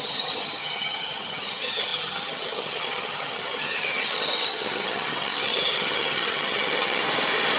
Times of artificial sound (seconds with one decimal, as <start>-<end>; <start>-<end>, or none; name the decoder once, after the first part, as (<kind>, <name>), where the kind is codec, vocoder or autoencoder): 0.0-7.0 (vocoder, HiFi-GAN)